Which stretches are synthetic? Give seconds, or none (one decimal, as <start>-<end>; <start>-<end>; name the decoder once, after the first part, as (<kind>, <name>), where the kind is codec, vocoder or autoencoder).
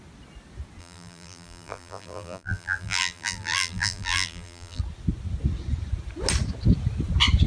0.8-4.8 (vocoder, BigVGAN v2)